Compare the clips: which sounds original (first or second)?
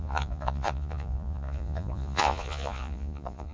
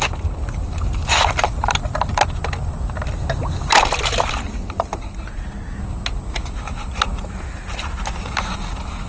second